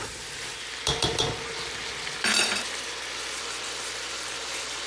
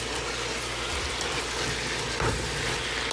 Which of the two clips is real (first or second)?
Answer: second